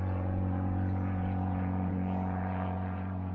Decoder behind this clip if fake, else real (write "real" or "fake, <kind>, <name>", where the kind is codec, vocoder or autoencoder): fake, vocoder, Vocos